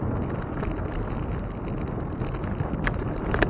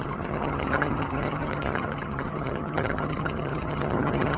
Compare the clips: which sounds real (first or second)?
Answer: first